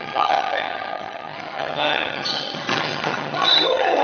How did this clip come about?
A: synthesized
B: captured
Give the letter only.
A